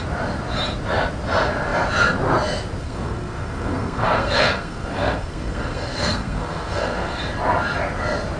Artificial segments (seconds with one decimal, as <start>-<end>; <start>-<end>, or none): 2.8-7.2